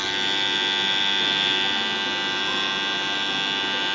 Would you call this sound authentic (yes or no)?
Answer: yes